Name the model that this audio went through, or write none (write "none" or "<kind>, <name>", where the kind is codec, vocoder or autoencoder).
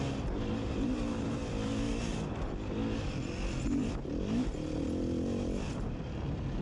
none